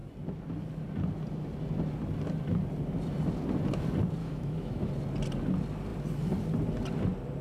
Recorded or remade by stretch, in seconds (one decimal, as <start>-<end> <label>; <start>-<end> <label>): 0.0-4.2 recorded; 4.2-4.9 remade; 4.9-7.4 recorded

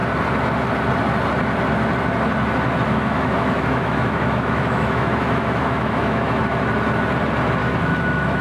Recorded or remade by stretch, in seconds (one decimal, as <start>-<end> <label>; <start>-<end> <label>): 0.0-2.9 recorded; 2.9-6.4 remade; 6.4-7.6 recorded; 7.6-8.4 remade

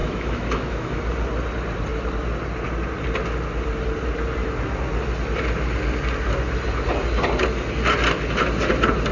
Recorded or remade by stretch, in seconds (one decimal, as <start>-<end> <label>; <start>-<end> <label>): 0.0-1.0 remade; 1.0-9.1 recorded

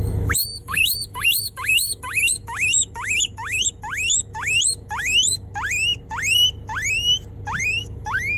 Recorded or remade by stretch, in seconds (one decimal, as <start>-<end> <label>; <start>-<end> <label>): 0.0-5.5 remade; 5.5-7.8 recorded; 7.8-8.4 remade